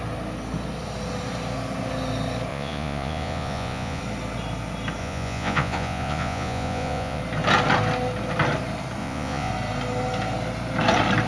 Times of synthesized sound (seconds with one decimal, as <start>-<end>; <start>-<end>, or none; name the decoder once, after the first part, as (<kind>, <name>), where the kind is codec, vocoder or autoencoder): 2.5-4.0 (vocoder, Vocos); 5.0-7.2; 9.0-9.5